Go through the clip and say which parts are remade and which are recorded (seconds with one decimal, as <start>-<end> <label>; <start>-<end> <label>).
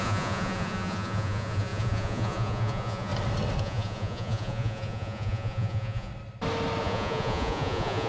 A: 0.0-3.1 remade; 3.1-3.6 recorded; 3.6-6.1 remade; 6.1-6.8 recorded; 6.8-8.1 remade